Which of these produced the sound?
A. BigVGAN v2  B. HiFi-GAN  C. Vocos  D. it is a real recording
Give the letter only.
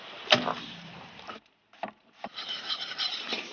A